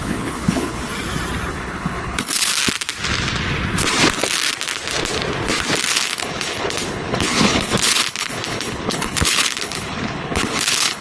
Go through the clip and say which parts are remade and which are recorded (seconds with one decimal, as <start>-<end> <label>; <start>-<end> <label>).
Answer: 0.0-0.9 remade; 0.9-1.5 recorded; 1.5-2.5 remade; 2.5-5.9 recorded; 5.9-11.0 remade